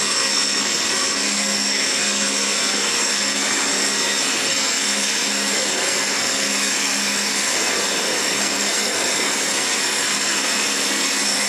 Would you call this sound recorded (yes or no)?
no